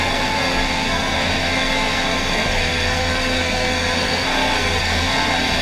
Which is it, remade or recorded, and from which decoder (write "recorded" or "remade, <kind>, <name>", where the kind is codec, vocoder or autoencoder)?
remade, codec, SNAC